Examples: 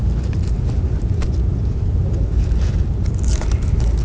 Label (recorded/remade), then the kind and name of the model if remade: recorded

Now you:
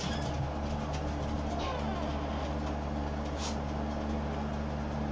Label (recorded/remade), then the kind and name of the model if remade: recorded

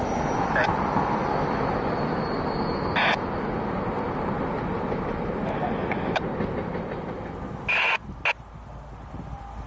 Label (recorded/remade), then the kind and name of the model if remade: recorded